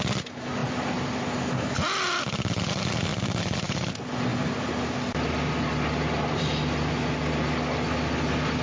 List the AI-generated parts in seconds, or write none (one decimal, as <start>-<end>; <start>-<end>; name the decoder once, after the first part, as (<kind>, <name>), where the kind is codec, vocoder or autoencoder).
3.1-3.9 (vocoder, BigVGAN v2)